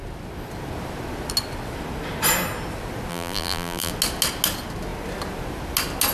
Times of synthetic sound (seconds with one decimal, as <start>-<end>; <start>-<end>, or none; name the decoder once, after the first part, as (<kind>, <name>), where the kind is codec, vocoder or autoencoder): 3.1-3.9 (vocoder, BigVGAN v2)